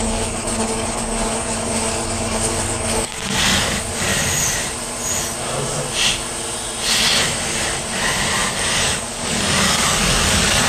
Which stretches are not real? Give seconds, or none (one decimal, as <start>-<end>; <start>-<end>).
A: 0.0-4.1; 8.5-10.7